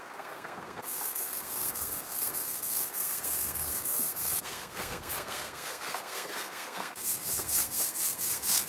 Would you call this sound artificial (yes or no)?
yes